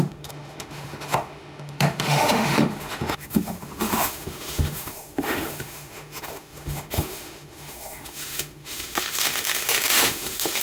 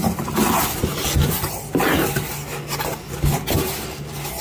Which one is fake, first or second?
first